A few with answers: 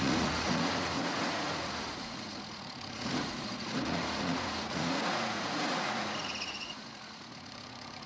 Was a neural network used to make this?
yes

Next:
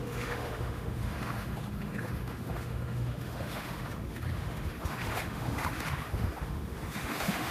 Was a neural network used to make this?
yes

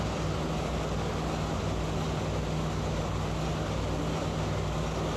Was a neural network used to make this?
no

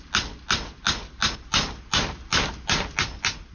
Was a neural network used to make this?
no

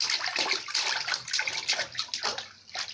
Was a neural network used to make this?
no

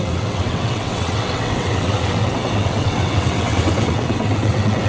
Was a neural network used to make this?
yes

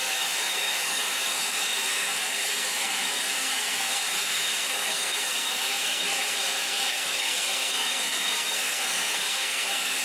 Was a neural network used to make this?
yes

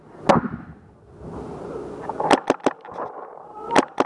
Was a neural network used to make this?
no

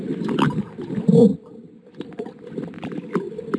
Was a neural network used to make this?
no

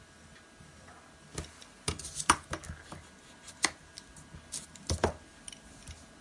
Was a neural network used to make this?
no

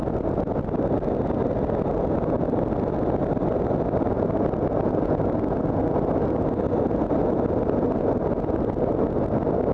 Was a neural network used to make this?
no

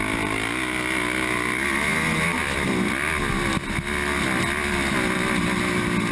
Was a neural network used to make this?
no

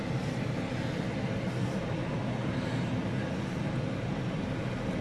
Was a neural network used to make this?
no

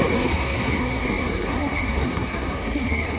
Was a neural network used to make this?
yes